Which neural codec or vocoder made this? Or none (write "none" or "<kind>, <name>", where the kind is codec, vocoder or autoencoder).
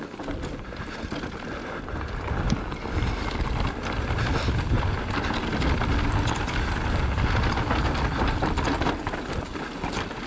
none